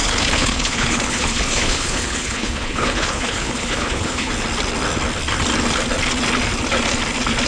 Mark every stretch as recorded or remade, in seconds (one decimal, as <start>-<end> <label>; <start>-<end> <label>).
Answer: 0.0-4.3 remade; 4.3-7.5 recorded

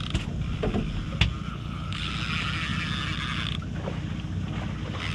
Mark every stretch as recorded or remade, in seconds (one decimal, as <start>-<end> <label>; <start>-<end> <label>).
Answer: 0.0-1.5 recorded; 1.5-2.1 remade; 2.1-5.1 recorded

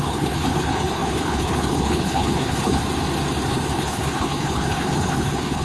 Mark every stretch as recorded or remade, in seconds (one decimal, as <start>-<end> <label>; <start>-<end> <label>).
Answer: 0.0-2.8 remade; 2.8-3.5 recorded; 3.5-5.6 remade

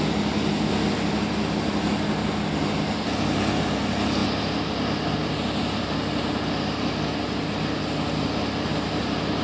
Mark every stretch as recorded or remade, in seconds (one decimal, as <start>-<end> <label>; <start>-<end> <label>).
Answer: 0.0-9.4 recorded